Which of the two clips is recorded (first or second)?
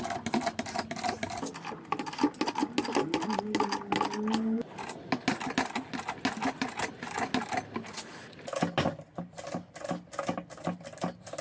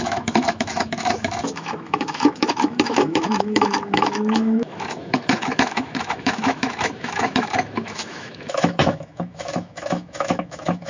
first